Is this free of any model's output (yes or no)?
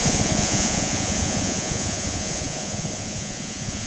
no